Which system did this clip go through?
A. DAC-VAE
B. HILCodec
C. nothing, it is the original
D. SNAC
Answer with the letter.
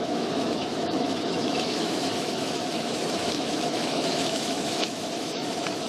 A